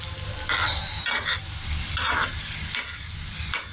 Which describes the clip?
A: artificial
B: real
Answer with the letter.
B